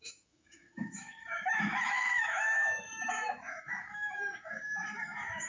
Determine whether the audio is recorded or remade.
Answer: remade